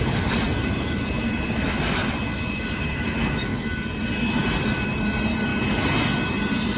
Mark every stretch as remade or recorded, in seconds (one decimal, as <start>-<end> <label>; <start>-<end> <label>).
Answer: 0.0-2.0 remade; 2.0-2.6 recorded; 2.6-3.5 remade; 3.5-4.4 recorded; 4.4-5.5 remade; 5.5-6.3 recorded; 6.3-6.8 remade